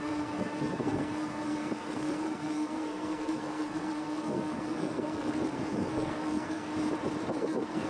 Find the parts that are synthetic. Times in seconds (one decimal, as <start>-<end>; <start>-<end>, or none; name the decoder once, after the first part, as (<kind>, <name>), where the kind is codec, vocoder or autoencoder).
0.0-6.7 (codec, SNAC); 7.3-7.9